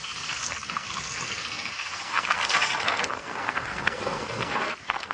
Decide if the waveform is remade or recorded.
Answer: remade